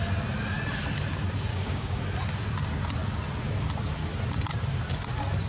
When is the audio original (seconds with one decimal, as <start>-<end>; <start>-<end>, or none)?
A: 0.0-1.5; 2.0-5.5